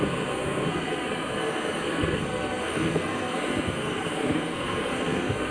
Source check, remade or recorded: remade